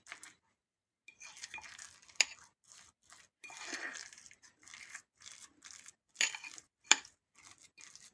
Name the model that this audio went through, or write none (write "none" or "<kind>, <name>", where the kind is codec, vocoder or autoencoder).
vocoder, BigVGAN v2